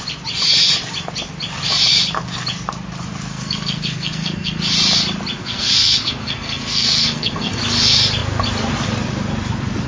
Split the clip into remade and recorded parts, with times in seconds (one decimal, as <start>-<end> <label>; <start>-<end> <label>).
0.0-3.3 recorded; 3.3-4.6 remade; 4.6-5.4 recorded; 5.4-7.6 remade; 7.6-9.9 recorded